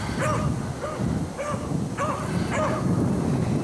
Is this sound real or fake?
real